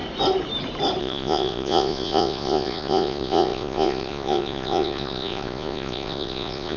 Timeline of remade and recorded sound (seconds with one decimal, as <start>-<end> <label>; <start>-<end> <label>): 0.0-1.0 recorded; 1.0-6.8 remade